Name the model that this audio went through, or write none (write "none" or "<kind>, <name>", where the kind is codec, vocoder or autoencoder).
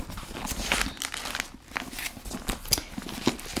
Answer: none